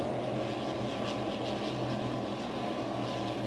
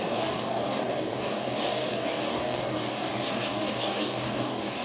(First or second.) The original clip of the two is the first